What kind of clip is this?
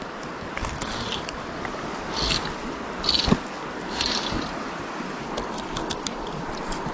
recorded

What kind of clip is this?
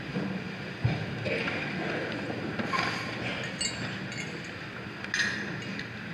recorded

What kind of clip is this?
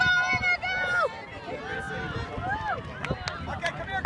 recorded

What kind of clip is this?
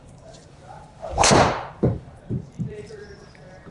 remade